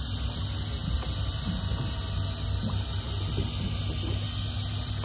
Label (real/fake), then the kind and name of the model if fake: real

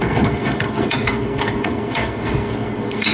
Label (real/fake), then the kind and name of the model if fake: fake, codec, SNAC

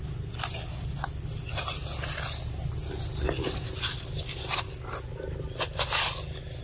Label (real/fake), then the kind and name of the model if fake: real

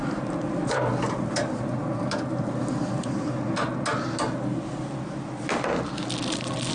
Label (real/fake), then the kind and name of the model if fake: real